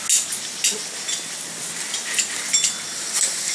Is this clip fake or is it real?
real